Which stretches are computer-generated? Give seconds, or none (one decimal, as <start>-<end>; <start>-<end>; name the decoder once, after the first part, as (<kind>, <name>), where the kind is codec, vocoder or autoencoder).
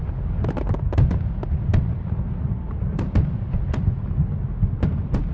none